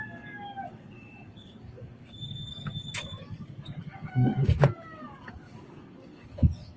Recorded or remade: remade